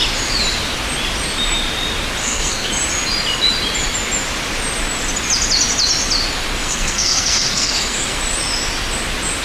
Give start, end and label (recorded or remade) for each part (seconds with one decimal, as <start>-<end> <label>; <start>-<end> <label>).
0.0-2.2 recorded; 2.2-2.7 remade; 2.7-6.6 recorded; 6.6-8.2 remade; 8.2-9.4 recorded